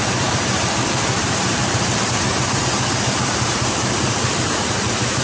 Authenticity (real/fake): fake